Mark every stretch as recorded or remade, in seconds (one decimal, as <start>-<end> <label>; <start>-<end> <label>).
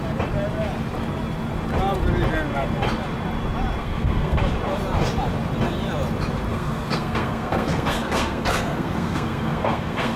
0.0-3.8 recorded; 3.8-4.4 remade; 4.4-6.5 recorded; 6.5-10.2 remade